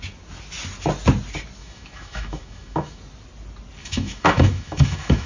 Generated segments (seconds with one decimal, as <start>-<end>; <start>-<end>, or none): 1.6-3.0; 3.8-5.3